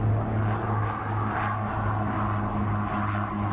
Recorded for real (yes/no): yes